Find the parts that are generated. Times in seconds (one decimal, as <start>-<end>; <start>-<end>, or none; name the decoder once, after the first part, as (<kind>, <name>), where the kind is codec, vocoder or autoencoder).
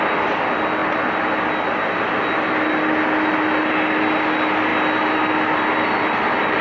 none